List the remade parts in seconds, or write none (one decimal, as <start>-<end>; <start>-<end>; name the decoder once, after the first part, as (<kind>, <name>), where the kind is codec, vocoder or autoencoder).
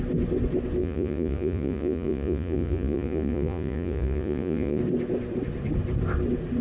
0.8-4.8 (vocoder, Vocos)